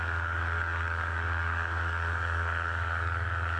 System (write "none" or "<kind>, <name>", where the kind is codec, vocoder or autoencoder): codec, DAC